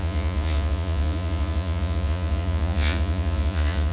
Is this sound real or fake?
fake